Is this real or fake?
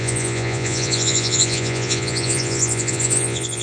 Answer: fake